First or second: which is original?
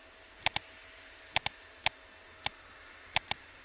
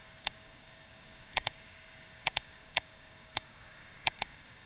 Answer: first